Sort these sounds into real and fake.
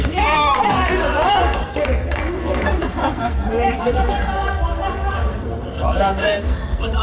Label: fake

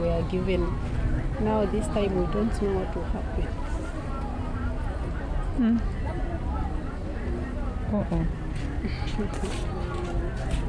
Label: real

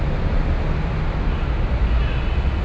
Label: real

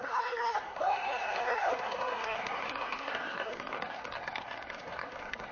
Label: fake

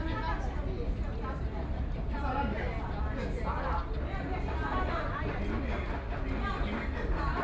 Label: real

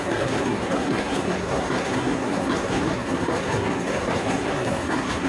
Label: fake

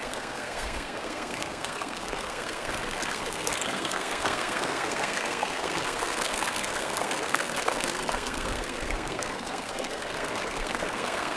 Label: fake